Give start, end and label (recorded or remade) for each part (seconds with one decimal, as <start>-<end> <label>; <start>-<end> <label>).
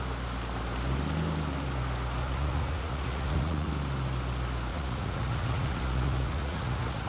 0.0-2.2 recorded; 2.2-3.7 remade; 3.7-4.7 recorded; 4.7-7.1 remade